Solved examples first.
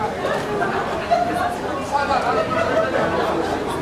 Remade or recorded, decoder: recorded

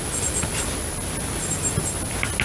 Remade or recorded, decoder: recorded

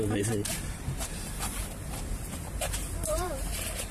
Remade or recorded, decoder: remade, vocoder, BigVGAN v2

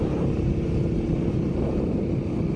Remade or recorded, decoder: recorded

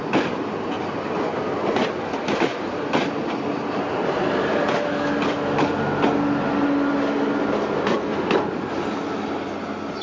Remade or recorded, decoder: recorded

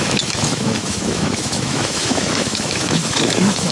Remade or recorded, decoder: remade, autoencoder, DAC-VAE